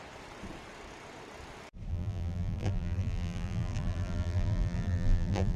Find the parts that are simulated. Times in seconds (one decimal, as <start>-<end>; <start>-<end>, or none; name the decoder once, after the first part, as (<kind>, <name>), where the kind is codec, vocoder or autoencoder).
1.9-5.6 (vocoder, BigVGAN v2)